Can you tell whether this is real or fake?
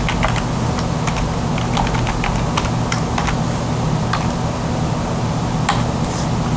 real